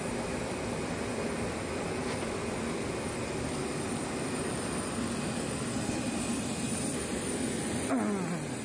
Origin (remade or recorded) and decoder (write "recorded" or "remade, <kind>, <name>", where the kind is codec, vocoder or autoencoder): recorded